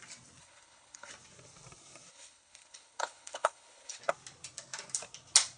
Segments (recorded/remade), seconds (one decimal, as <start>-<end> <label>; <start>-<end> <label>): 0.0-0.4 recorded; 0.4-1.1 remade; 1.1-2.1 recorded; 2.1-4.0 remade; 4.0-5.6 recorded